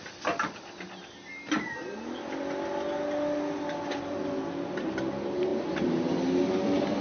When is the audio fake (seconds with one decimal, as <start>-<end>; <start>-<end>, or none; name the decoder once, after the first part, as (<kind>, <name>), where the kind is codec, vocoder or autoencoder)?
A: none